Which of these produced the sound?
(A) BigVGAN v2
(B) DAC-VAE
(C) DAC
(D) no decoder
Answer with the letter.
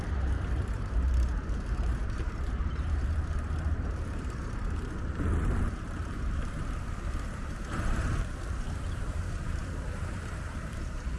A